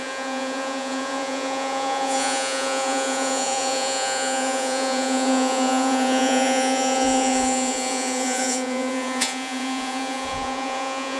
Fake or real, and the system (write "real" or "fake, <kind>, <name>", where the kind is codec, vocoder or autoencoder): fake, vocoder, Vocos